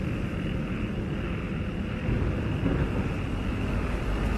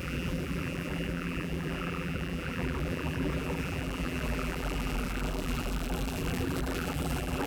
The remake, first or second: second